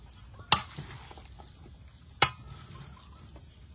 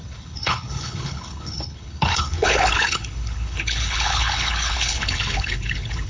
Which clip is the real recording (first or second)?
first